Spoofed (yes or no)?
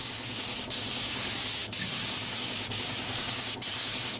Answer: yes